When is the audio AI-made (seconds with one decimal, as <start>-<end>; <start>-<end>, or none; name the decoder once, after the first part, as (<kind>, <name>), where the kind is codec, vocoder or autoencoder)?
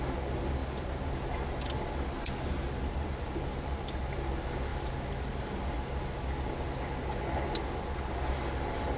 none